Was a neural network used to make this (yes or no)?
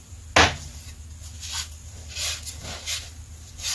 no